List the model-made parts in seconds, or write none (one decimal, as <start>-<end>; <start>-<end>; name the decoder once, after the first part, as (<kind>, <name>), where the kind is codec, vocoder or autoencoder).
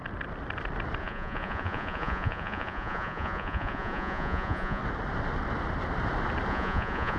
1.0-4.8 (vocoder, Vocos); 6.5-7.2